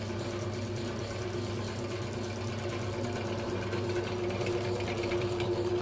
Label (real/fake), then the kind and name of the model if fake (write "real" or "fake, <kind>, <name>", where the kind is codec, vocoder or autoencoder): real